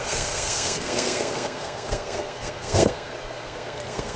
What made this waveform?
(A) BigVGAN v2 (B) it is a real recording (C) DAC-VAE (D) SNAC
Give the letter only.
D